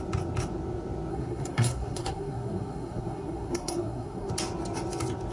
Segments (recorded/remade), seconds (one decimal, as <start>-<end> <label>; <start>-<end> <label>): 0.0-1.1 recorded; 1.1-4.3 remade; 4.3-5.3 recorded